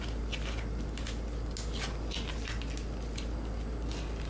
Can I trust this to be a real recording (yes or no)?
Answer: yes